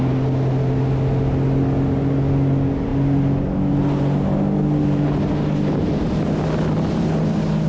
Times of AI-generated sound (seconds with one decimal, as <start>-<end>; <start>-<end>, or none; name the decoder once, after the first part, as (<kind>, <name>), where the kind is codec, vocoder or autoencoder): none